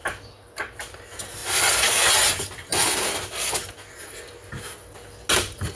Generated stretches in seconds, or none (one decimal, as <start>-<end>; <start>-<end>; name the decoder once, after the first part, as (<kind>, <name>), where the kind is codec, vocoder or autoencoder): none